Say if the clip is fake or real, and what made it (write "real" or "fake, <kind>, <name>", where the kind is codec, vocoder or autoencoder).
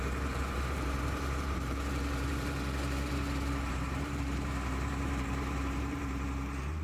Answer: fake, vocoder, BigVGAN v2